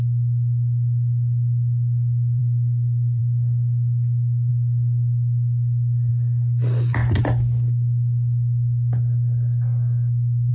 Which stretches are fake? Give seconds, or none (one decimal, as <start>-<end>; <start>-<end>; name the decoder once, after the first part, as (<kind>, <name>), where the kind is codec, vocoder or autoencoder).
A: 2.4-3.2 (codec, SNAC)